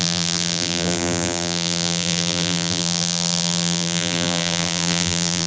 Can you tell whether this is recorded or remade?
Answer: remade